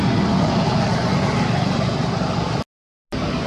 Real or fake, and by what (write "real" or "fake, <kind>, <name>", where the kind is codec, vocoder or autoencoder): real